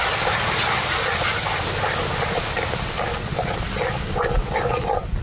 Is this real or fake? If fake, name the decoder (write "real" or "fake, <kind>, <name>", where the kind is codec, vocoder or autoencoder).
real